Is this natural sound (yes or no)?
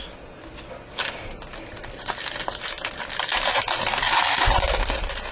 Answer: yes